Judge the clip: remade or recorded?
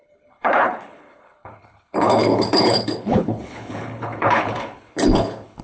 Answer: remade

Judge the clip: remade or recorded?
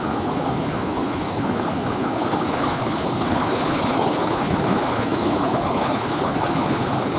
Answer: remade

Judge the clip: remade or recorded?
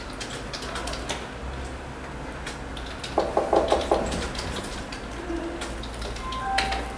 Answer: recorded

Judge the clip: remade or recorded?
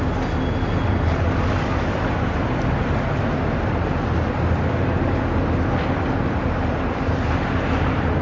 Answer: recorded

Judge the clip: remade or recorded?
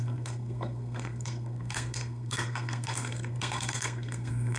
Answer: remade